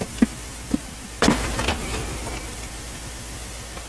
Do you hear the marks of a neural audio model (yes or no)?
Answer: no